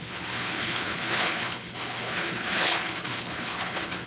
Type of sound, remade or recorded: remade